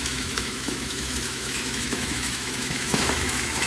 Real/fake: fake